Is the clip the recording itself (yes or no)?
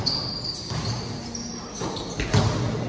yes